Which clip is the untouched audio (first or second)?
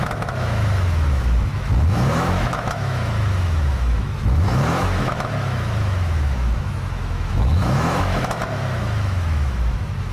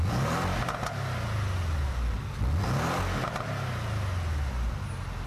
second